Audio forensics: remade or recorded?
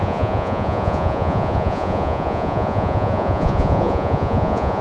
remade